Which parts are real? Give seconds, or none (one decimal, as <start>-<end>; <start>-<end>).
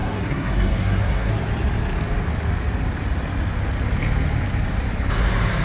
1.3-5.6